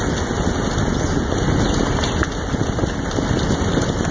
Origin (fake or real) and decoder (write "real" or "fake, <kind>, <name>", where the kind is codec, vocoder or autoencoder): real